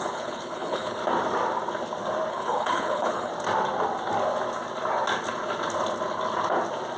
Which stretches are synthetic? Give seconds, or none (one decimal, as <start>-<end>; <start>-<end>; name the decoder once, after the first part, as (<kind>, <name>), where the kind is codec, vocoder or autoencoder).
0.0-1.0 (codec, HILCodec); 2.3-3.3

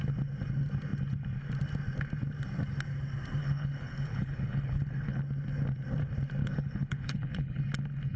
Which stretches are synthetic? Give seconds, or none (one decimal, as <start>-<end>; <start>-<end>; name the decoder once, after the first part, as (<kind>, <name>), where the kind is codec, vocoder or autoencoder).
3.4-5.2 (codec, HILCodec); 6.4-7.6

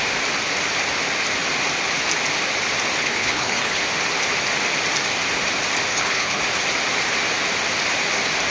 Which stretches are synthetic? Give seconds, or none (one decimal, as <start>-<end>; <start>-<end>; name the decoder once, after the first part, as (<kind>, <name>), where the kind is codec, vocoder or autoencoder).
3.0-3.8 (codec, HILCodec); 5.9-6.4